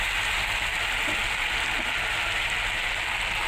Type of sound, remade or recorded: recorded